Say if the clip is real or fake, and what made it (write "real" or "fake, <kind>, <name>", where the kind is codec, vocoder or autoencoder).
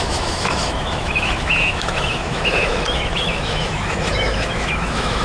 fake, autoencoder, DAC-VAE